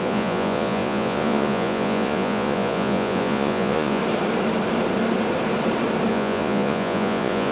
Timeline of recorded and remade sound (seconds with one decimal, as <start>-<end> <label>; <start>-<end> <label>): 0.0-4.0 remade; 4.0-6.1 recorded; 6.1-7.5 remade